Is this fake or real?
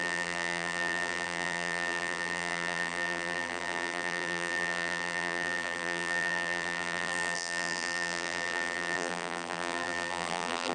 fake